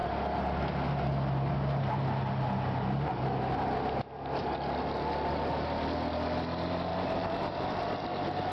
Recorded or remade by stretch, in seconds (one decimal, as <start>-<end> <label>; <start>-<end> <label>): 0.0-6.9 recorded; 6.9-7.9 remade; 7.9-8.5 recorded